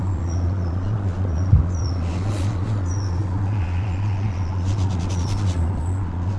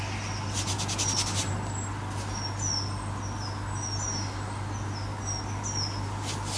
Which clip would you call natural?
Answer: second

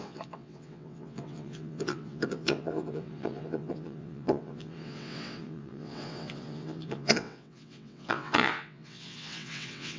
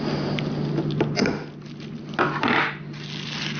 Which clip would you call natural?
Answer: second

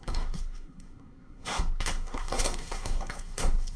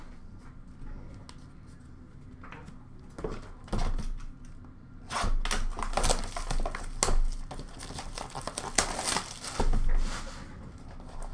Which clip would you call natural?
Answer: second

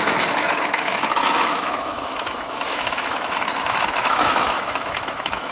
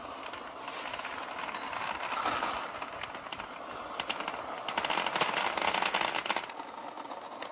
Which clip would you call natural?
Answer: second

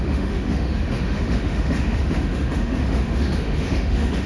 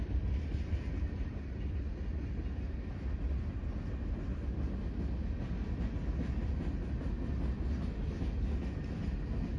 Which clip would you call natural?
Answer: second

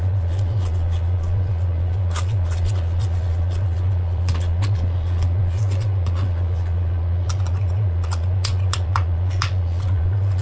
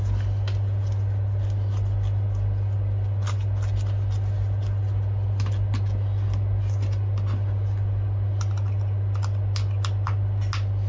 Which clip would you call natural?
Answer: second